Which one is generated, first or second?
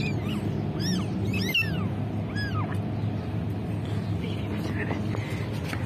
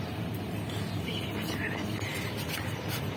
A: second